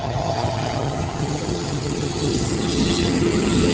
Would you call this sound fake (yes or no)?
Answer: yes